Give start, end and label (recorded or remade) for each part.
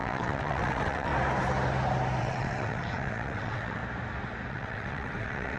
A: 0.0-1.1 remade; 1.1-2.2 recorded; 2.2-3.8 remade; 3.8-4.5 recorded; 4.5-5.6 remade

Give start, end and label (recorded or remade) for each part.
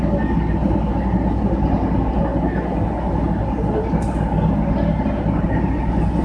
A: 0.0-6.2 recorded